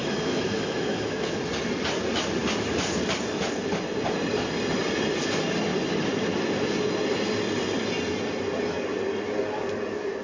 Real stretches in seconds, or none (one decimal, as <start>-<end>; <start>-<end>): 1.4-10.2

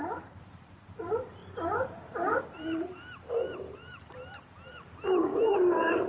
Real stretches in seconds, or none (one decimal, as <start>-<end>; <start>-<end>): none

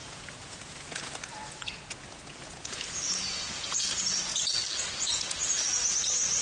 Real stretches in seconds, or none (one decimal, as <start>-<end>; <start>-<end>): 4.3-4.9; 5.4-6.4

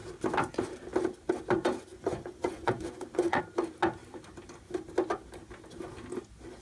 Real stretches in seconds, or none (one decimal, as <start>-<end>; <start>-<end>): 0.0-1.9; 3.4-6.6

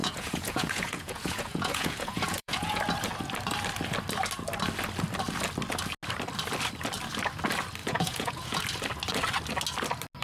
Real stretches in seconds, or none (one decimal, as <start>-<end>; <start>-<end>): 2.8-7.8; 8.6-10.2

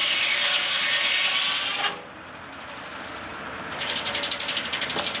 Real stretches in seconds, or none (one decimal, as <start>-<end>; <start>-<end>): 0.0-5.2

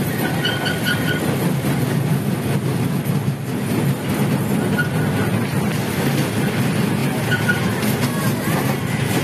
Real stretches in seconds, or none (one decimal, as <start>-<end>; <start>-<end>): 0.0-9.2